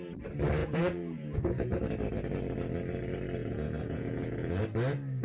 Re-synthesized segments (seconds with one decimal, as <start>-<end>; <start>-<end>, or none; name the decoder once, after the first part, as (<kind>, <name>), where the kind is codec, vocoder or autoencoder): 0.6-1.8 (vocoder, Vocos); 3.4-4.6